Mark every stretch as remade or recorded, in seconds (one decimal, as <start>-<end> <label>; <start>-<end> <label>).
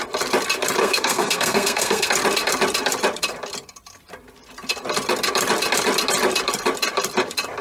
0.0-0.8 recorded; 0.8-2.1 remade; 2.1-7.6 recorded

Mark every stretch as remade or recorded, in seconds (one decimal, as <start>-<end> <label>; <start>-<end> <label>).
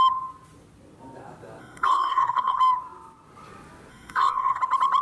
0.0-1.6 recorded; 1.6-2.6 remade; 2.6-3.9 recorded; 3.9-4.6 remade; 4.6-5.0 recorded